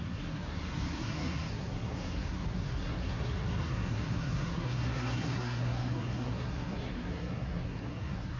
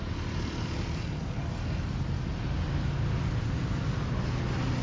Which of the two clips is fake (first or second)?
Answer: first